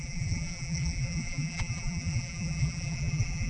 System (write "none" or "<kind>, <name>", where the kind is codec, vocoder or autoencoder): vocoder, BigVGAN v2